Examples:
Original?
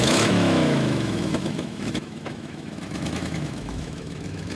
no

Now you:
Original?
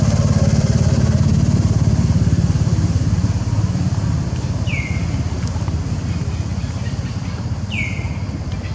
yes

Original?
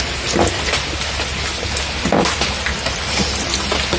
yes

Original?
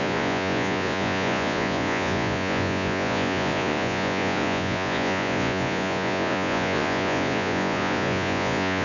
no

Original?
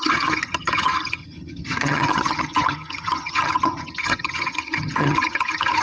no